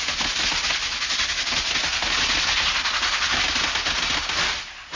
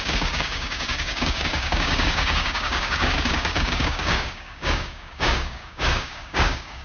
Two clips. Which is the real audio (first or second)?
first